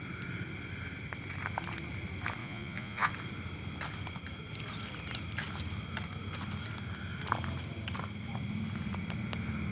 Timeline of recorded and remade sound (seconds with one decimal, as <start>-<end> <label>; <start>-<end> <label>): 0.0-2.4 recorded; 2.4-3.1 remade; 3.1-9.7 recorded